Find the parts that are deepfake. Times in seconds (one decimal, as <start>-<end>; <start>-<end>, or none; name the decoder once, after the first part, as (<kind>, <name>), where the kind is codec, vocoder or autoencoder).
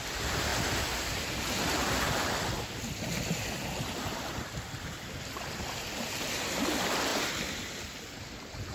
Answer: none